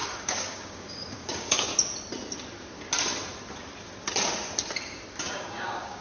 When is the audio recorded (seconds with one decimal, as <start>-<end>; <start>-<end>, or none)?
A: 1.7-5.3

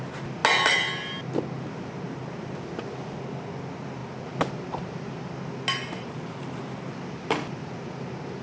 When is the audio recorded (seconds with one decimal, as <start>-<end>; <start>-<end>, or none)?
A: 0.0-8.4

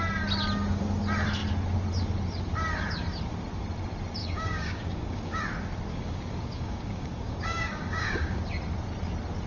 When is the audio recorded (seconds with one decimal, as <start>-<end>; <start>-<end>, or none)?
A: 0.0-4.2; 5.4-5.9; 8.4-9.5

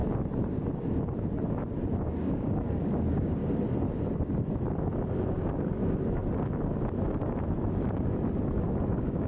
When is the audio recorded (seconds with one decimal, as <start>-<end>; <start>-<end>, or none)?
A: 0.0-2.2; 3.4-5.1; 6.2-8.9

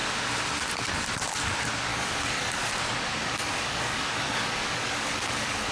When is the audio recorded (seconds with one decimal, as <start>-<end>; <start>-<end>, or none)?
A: 0.0-1.9; 2.7-3.2

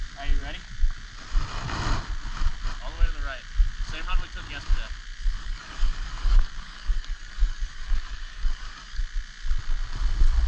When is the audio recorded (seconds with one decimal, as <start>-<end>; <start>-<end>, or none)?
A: 0.0-5.4; 9.0-10.5